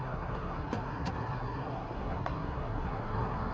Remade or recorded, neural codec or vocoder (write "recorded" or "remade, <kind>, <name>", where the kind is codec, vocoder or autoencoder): remade, codec, SNAC